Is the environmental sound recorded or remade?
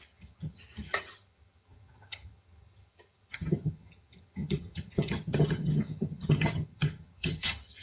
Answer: remade